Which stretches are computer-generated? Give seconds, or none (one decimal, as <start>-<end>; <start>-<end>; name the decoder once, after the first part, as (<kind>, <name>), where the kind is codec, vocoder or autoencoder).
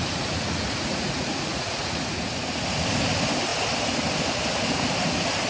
0.0-2.2 (vocoder, Vocos)